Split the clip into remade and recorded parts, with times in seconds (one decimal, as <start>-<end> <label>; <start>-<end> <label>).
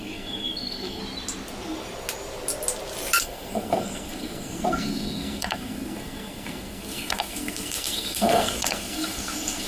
0.0-1.0 remade; 1.0-3.2 recorded; 3.2-9.7 remade